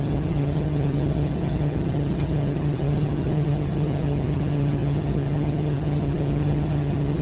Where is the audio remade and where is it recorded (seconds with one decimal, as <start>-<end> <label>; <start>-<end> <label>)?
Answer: 0.0-7.2 remade